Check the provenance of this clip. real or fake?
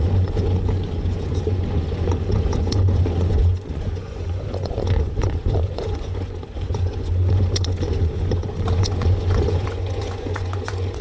fake